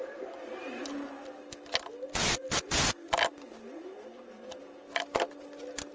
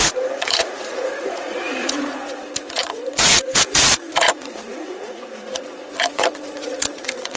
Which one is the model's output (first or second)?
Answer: second